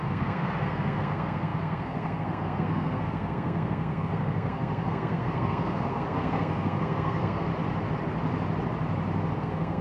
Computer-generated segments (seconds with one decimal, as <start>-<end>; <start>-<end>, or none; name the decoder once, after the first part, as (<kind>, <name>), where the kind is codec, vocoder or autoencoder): 0.0-7.5 (codec, SNAC); 9.4-9.8